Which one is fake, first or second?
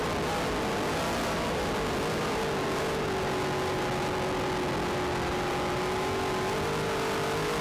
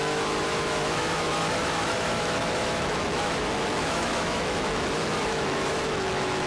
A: second